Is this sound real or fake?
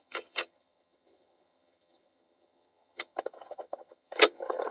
fake